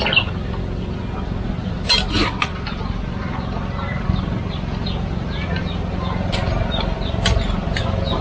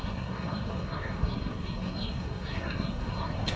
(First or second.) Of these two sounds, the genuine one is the first